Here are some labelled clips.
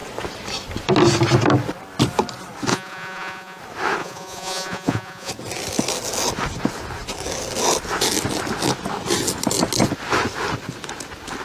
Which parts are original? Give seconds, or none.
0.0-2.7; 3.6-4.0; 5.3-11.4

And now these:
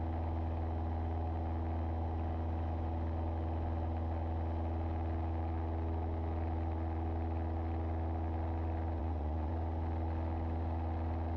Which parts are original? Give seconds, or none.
0.0-9.0; 9.5-11.4